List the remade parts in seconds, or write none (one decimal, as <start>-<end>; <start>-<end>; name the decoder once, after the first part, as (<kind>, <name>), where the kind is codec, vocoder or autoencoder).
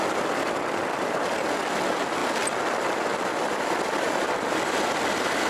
none